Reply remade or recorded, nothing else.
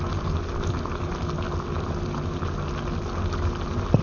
recorded